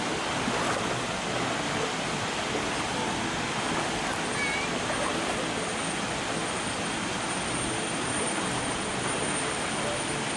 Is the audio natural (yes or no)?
yes